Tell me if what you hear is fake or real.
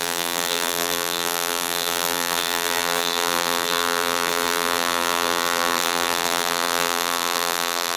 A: fake